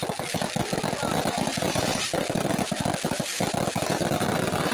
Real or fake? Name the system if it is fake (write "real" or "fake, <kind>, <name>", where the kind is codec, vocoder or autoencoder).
real